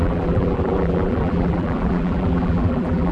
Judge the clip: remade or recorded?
remade